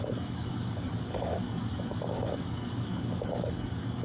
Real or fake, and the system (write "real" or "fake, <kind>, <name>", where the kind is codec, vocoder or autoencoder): fake, codec, DAC